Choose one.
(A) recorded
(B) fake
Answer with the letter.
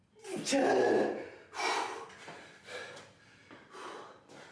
A